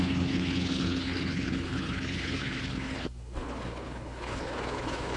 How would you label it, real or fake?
fake